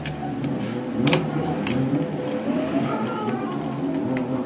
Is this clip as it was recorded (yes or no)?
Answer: yes